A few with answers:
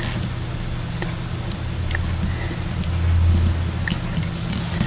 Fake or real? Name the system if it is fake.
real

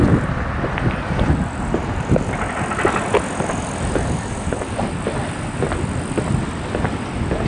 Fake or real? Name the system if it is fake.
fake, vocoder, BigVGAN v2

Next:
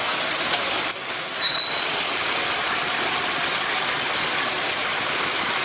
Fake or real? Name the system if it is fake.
real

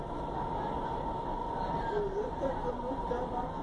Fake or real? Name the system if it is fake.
fake, vocoder, BigVGAN v2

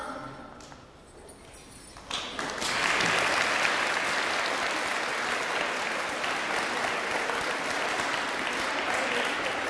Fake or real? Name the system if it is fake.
real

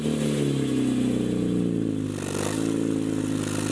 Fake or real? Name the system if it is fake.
real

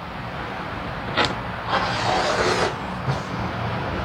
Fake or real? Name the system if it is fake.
real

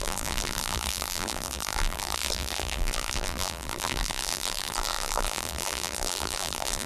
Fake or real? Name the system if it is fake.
fake, vocoder, BigVGAN v2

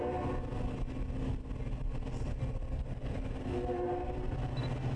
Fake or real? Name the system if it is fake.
real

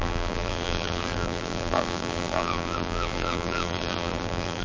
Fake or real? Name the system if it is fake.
fake, vocoder, BigVGAN v2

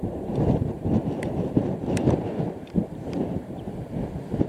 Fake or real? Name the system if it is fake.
fake, vocoder, BigVGAN v2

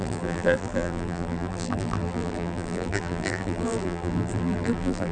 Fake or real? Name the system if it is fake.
fake, vocoder, BigVGAN v2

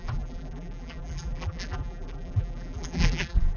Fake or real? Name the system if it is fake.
fake, vocoder, BigVGAN v2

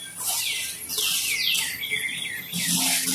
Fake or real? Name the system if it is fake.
real